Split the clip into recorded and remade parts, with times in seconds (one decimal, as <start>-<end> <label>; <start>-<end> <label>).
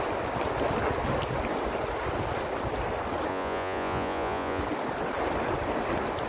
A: 0.0-3.3 recorded; 3.3-4.6 remade; 4.6-6.3 recorded